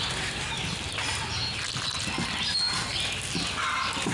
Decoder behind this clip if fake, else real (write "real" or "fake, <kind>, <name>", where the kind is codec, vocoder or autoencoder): real